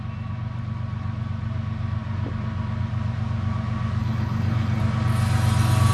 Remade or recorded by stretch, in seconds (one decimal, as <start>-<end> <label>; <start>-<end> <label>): 0.0-4.0 recorded; 4.0-4.8 remade; 4.8-5.9 recorded

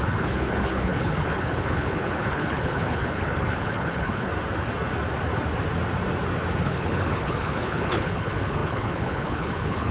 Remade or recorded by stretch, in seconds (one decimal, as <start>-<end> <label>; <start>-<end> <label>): 0.0-4.3 remade; 4.3-6.6 recorded; 6.6-9.9 remade

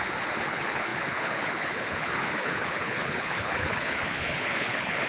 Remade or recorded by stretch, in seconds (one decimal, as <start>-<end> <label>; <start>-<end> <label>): 0.0-5.1 remade

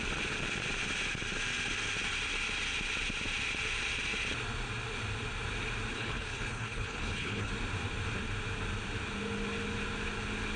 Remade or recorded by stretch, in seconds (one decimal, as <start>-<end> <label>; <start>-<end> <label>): 0.0-5.9 recorded; 5.9-7.5 remade; 7.5-10.6 recorded

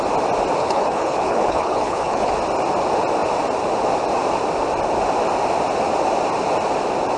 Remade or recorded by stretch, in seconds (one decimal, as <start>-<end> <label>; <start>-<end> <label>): 0.0-0.6 recorded; 0.6-2.3 remade; 2.3-7.2 recorded

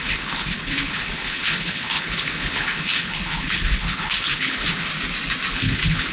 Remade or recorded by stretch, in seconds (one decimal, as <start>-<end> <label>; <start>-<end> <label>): 0.0-4.9 remade; 4.9-5.5 recorded; 5.5-6.1 remade